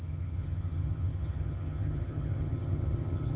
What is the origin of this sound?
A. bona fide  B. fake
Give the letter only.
B